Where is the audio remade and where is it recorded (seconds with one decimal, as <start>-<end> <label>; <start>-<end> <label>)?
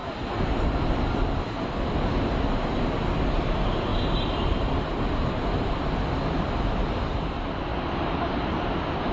0.0-3.9 recorded; 3.9-6.0 remade; 6.0-7.7 recorded; 7.7-8.7 remade; 8.7-9.1 recorded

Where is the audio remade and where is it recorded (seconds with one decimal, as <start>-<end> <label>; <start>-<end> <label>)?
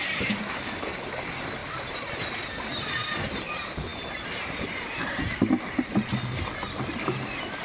0.0-7.6 recorded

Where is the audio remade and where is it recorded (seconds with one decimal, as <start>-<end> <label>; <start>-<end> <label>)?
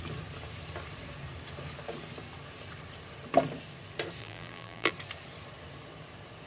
0.0-4.2 recorded; 4.2-4.9 remade; 4.9-6.5 recorded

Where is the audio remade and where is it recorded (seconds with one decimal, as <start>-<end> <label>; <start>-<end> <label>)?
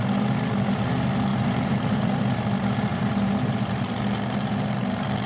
0.0-1.3 recorded; 1.3-2.2 remade; 2.2-2.9 recorded; 2.9-3.9 remade; 3.9-5.3 recorded